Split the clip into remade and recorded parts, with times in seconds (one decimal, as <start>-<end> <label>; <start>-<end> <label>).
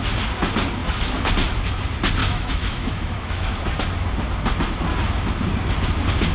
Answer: 0.0-0.8 recorded; 0.8-1.3 remade; 1.3-2.2 recorded; 2.2-3.6 remade; 3.6-6.3 recorded